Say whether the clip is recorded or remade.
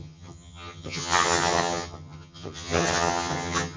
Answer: remade